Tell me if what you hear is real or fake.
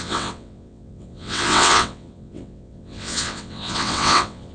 fake